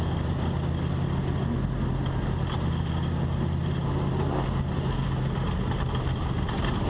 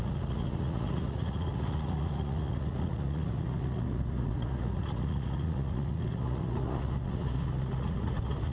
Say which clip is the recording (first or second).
first